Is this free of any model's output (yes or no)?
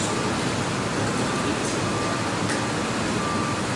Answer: yes